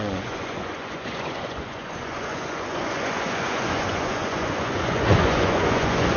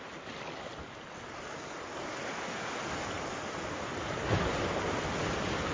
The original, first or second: second